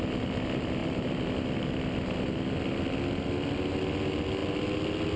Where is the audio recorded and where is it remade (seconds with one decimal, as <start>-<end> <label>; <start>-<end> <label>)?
0.0-5.2 recorded